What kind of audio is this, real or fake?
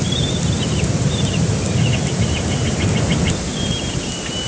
real